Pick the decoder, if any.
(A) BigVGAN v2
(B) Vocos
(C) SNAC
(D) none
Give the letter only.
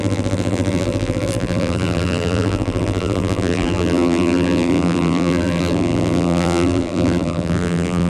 A